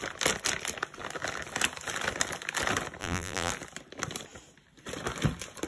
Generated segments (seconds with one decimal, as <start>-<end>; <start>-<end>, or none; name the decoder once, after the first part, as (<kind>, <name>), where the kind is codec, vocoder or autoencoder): 3.0-3.5 (vocoder, BigVGAN v2)